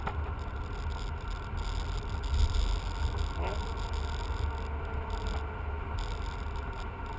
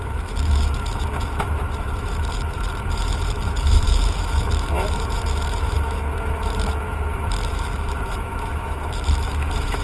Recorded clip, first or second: first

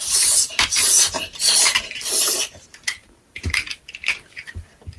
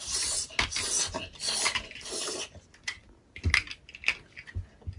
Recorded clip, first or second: second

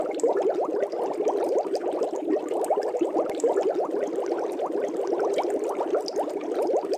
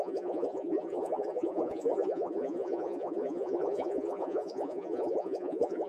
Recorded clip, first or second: first